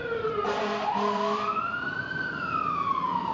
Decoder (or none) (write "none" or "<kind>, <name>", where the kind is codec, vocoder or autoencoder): vocoder, BigVGAN v2